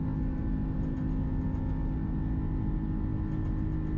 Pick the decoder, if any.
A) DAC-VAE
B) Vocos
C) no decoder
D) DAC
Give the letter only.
C